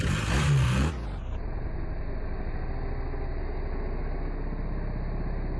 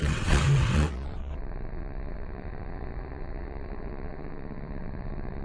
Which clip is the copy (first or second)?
second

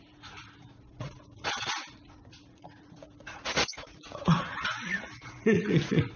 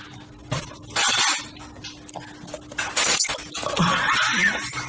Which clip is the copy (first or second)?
first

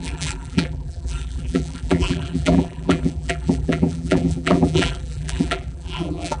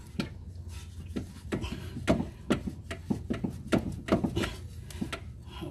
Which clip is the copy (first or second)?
first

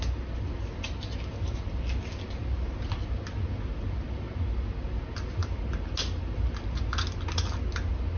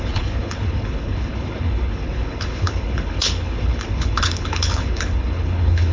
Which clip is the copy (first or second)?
second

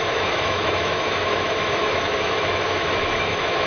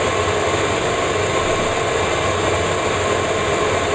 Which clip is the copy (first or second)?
first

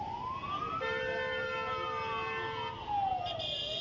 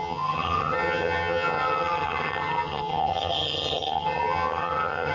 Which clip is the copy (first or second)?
second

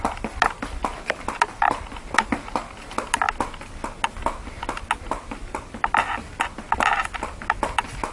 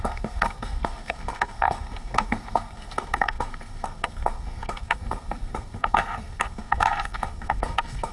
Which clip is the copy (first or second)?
second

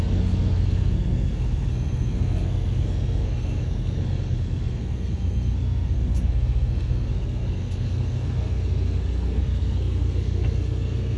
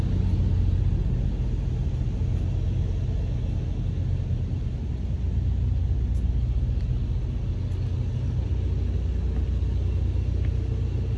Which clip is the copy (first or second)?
first